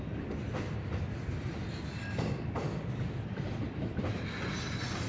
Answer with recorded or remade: recorded